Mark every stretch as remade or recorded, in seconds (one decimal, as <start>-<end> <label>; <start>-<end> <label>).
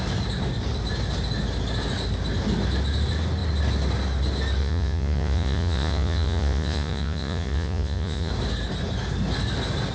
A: 0.0-4.6 recorded; 4.6-8.3 remade; 8.3-9.9 recorded